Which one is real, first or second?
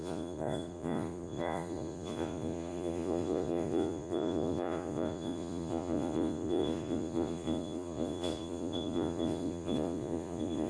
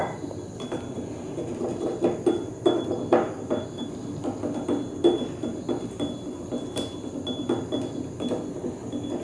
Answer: second